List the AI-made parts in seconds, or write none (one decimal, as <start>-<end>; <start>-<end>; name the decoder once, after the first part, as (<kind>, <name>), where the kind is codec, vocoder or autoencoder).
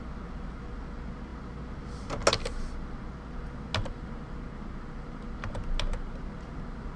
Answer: none